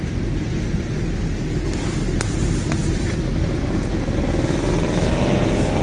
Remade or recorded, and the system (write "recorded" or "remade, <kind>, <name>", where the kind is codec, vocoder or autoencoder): recorded